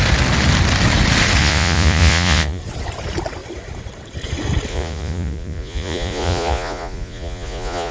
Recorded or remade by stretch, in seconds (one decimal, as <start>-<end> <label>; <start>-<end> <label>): 0.0-1.4 recorded; 1.4-2.6 remade; 2.6-4.7 recorded; 4.7-7.9 remade